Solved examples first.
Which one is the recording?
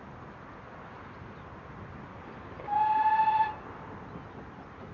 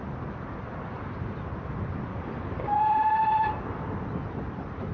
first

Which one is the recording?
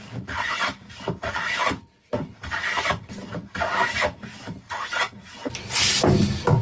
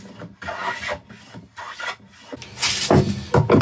second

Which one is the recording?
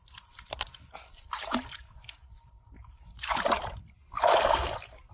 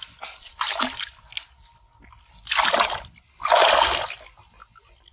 second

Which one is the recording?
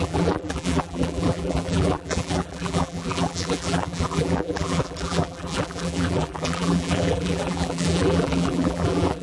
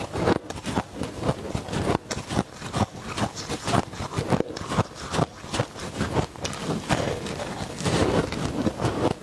second